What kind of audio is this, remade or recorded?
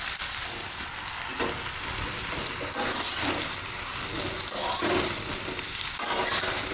remade